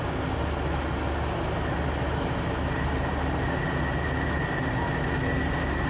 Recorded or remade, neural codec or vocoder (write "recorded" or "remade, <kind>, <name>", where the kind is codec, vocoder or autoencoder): recorded